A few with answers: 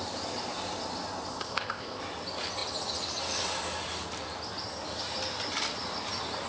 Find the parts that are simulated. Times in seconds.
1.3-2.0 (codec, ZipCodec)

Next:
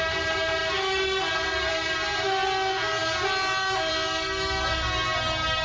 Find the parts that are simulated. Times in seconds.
none

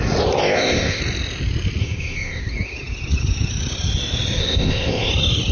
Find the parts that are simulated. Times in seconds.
0.4-1.0 (codec, ZipCodec); 1.8-2.4; 4.4-5.1

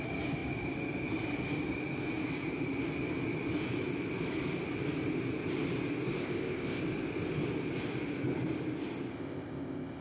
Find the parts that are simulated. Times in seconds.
6.2-6.8 (codec, ZipCodec); 9.1-10.0

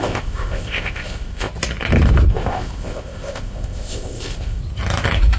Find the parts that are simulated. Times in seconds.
0.0-1.5 (codec, ZipCodec); 2.3-4.6

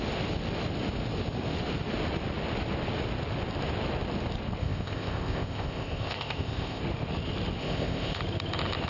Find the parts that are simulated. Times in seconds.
4.6-6.8 (codec, ZipCodec); 7.6-8.2